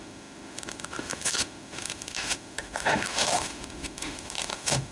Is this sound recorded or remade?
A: remade